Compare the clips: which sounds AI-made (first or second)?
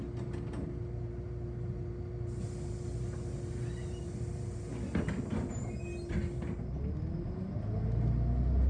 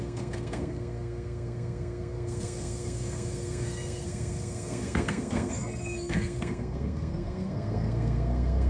second